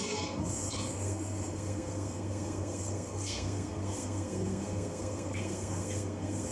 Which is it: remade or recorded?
remade